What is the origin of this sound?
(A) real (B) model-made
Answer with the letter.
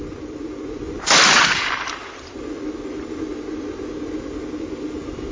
A